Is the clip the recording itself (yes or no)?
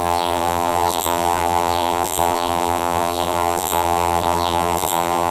no